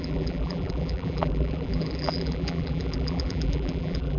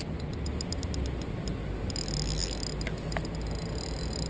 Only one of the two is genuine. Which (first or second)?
second